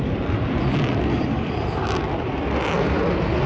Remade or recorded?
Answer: recorded